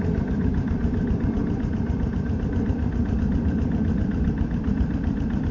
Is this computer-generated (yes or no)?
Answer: no